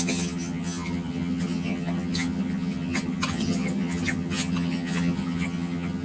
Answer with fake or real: fake